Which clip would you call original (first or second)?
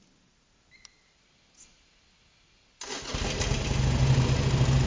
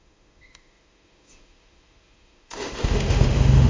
first